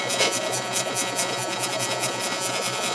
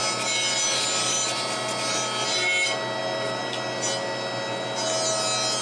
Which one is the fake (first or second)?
first